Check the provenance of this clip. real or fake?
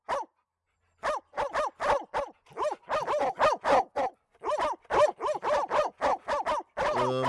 real